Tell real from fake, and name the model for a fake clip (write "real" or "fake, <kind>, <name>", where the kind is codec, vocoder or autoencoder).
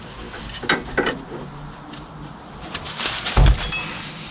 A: real